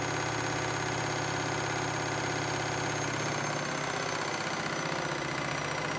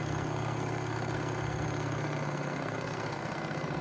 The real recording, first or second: first